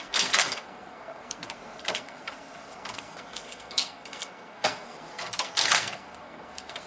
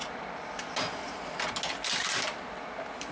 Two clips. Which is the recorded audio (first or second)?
second